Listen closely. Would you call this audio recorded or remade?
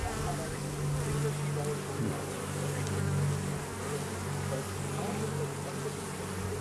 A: recorded